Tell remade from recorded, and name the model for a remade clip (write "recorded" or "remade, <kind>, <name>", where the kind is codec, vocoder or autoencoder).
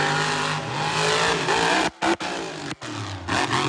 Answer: recorded